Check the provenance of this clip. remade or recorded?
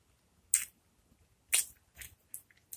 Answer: recorded